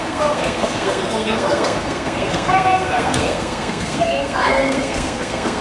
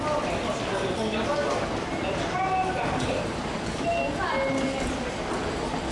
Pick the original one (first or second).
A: second